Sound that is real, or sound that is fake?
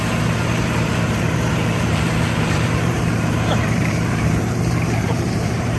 fake